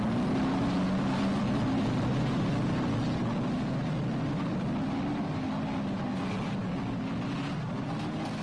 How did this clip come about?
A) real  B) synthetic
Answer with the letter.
A